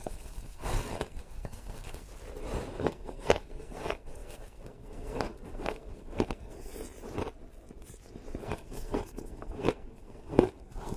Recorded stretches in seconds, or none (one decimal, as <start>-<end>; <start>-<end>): 2.1-2.8; 6.7-8.4